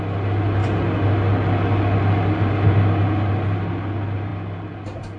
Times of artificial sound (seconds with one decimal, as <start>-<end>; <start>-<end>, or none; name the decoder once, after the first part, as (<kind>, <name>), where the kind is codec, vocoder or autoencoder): none